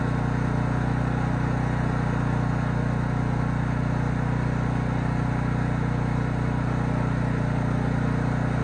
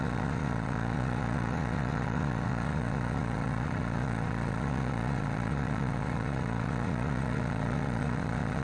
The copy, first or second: second